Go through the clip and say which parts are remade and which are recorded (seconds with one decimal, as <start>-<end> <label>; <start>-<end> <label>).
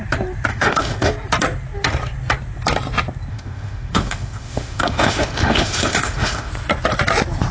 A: 0.0-0.5 recorded; 0.5-1.1 remade; 1.1-3.3 recorded; 3.3-6.5 remade; 6.5-7.5 recorded